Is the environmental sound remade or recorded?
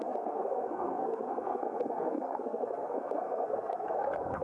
remade